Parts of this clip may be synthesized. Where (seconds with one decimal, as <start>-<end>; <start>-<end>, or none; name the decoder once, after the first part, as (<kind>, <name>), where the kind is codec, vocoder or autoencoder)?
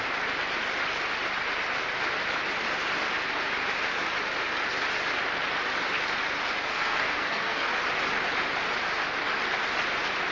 6.7-7.7 (codec, SNAC)